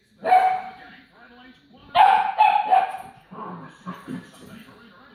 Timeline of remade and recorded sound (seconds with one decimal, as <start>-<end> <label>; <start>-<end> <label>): 0.0-1.8 recorded; 1.8-2.4 remade; 2.4-5.1 recorded